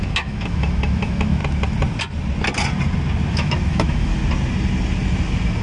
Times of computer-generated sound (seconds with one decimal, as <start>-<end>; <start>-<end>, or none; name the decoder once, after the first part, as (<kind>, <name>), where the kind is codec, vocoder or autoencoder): 0.0-1.4 (autoencoder, DAC-VAE); 3.3-4.2